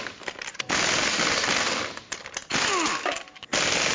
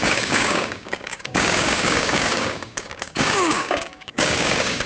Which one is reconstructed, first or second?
second